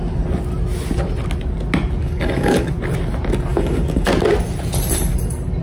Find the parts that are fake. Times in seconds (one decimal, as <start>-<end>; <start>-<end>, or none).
2.0-2.7; 3.5-4.1